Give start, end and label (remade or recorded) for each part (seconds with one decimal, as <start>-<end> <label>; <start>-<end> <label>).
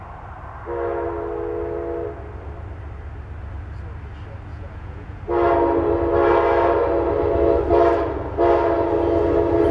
0.0-4.5 recorded; 4.5-5.2 remade; 5.2-9.7 recorded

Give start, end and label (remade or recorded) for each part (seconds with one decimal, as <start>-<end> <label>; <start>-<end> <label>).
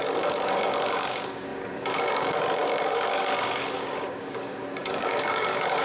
0.0-5.8 remade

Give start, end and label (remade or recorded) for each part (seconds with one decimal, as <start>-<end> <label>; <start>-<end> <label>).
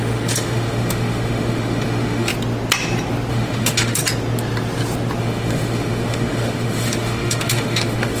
0.0-2.3 remade; 2.3-3.3 recorded; 3.3-4.0 remade; 4.0-5.2 recorded; 5.2-8.2 remade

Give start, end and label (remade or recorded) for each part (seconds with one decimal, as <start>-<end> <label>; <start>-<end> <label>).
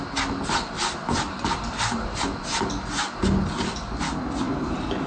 0.0-5.1 recorded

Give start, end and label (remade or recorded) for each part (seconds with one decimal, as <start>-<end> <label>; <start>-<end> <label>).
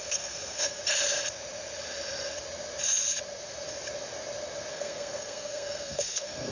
0.0-0.8 remade; 0.8-4.7 recorded; 4.7-6.5 remade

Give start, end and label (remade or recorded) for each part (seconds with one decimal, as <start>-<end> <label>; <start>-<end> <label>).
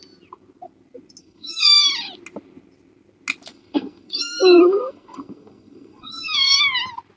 0.0-1.2 recorded; 1.2-1.9 remade; 1.9-3.5 recorded; 3.5-6.6 remade; 6.6-7.2 recorded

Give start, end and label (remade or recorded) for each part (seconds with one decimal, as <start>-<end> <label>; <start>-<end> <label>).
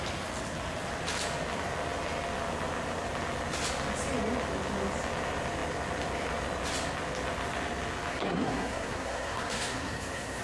0.0-8.1 recorded; 8.1-10.4 remade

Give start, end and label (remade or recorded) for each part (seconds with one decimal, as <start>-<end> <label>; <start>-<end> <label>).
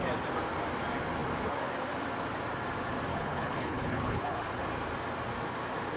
0.0-3.1 recorded; 3.1-4.6 remade; 4.6-6.0 recorded